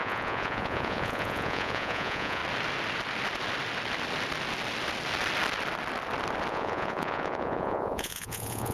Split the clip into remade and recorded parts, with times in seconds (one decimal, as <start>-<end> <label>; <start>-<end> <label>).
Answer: 0.0-2.4 remade; 2.4-6.5 recorded; 6.5-8.7 remade

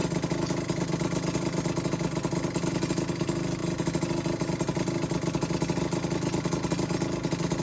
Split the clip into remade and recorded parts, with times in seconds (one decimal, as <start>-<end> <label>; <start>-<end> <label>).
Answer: 0.0-7.6 recorded

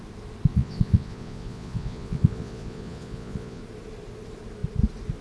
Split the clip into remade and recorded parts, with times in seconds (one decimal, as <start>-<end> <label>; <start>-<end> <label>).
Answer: 0.0-0.5 recorded; 0.5-3.6 remade; 3.6-5.2 recorded

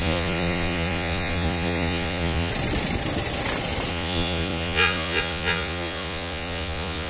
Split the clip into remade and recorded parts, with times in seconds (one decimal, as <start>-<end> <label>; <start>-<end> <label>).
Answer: 0.0-2.5 remade; 2.5-3.9 recorded; 3.9-7.1 remade

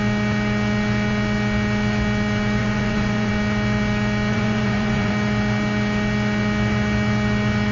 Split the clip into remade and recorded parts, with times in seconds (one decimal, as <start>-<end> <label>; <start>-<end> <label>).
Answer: 0.0-2.6 recorded; 2.6-3.3 remade; 3.3-4.3 recorded; 4.3-5.1 remade; 5.1-7.7 recorded